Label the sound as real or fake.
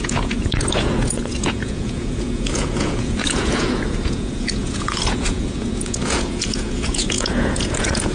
fake